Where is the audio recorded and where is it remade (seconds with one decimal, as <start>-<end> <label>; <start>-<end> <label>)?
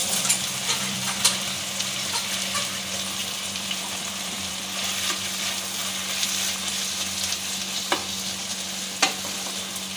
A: 0.0-1.5 remade; 1.5-3.2 recorded; 3.2-4.5 remade; 4.5-10.0 recorded